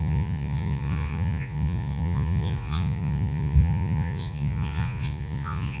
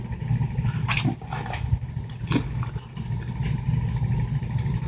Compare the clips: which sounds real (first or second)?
second